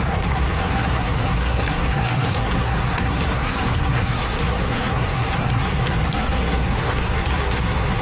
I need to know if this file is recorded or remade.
remade